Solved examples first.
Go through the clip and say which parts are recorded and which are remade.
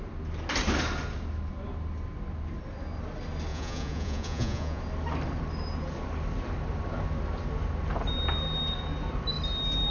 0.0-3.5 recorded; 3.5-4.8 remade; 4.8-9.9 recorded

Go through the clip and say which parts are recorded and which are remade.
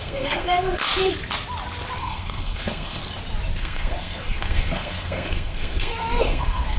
0.0-0.8 remade; 0.8-2.0 recorded; 2.0-3.0 remade; 3.0-3.6 recorded; 3.6-6.8 remade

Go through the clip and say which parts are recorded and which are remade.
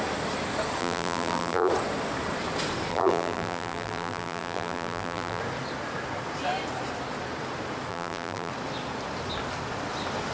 0.0-0.8 recorded; 0.8-1.7 remade; 1.7-2.9 recorded; 2.9-5.4 remade; 5.4-7.9 recorded; 7.9-8.5 remade; 8.5-10.3 recorded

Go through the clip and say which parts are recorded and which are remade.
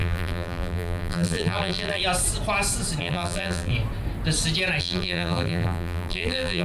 0.0-2.0 remade; 2.0-3.0 recorded; 3.0-3.7 remade; 3.7-4.8 recorded; 4.8-6.6 remade